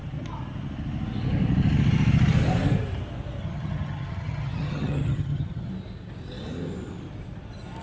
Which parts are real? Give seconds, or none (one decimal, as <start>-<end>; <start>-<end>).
0.0-3.4; 5.7-7.8